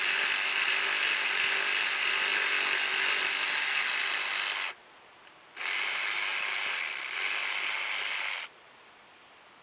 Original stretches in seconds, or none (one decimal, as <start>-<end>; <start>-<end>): 0.0-9.6